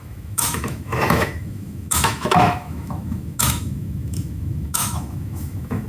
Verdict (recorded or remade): remade